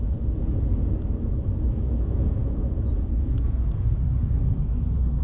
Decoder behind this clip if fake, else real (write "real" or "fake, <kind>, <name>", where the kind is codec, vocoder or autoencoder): fake, vocoder, Vocos